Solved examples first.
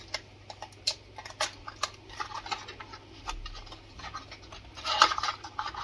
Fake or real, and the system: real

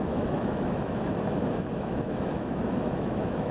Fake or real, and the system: fake, autoencoder, DAC-VAE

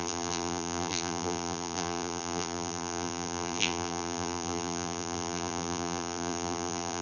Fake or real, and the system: fake, vocoder, BigVGAN v2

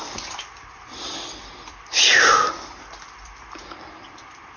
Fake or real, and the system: real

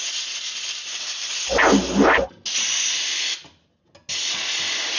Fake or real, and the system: real